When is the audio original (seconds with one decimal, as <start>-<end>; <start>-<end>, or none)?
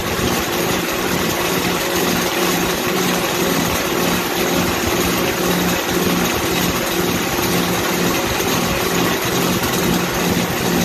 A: 1.6-2.3; 3.9-10.8